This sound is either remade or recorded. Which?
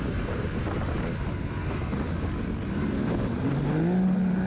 recorded